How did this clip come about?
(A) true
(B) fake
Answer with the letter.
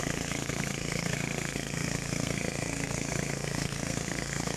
B